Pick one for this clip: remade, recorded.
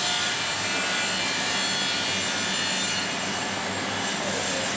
recorded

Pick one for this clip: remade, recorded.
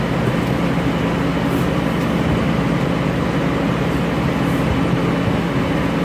recorded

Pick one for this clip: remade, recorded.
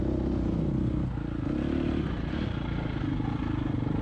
recorded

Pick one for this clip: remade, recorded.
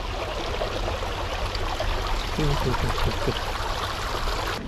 recorded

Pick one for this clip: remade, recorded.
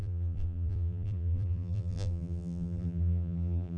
remade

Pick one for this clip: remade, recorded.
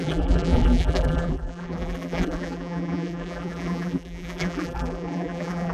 remade